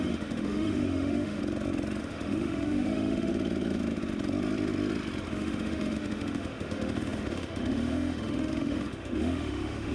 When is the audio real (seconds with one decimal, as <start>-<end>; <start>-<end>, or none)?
1.4-2.0; 3.3-5.3